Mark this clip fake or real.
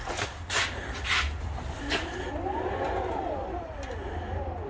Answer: real